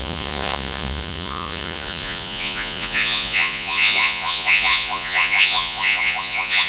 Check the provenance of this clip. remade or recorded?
remade